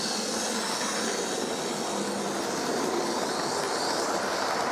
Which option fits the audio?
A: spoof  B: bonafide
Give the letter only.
B